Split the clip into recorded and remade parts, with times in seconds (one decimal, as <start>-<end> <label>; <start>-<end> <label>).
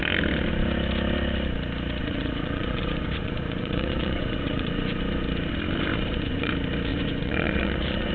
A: 0.0-2.0 recorded; 2.0-5.0 remade; 5.0-5.9 recorded; 5.9-6.5 remade; 6.5-6.9 recorded; 6.9-8.1 remade